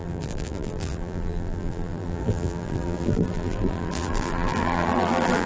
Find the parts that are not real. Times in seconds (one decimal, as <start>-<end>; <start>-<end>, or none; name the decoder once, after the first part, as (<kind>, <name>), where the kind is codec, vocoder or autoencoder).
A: 0.0-5.5 (vocoder, BigVGAN v2)